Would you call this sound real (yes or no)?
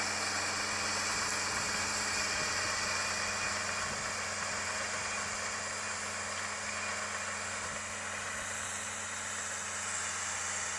yes